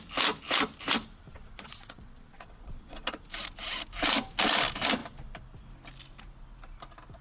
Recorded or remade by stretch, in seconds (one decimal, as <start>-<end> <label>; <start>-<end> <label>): 0.0-1.3 recorded; 1.3-3.2 remade; 3.2-7.2 recorded